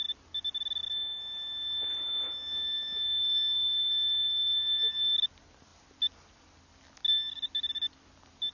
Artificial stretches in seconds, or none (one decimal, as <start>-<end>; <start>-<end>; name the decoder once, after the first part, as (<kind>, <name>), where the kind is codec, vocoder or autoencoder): 2.5-3.9 (codec, DAC)